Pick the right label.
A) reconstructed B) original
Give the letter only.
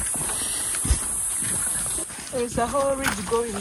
B